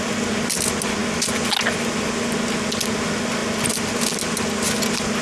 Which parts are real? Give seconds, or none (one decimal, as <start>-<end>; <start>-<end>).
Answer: 0.0-3.4; 3.9-5.2

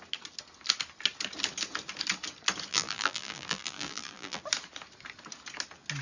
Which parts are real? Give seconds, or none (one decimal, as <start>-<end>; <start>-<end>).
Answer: 0.0-2.7; 4.4-6.0

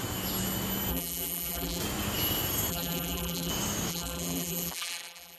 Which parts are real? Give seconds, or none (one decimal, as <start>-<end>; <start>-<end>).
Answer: 0.0-0.9; 1.8-2.7; 3.5-3.9

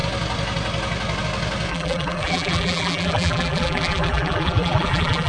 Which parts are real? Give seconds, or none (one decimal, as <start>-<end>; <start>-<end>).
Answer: 0.0-1.7